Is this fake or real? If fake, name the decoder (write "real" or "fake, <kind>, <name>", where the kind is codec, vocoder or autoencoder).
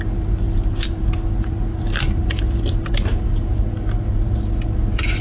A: fake, vocoder, BigVGAN v2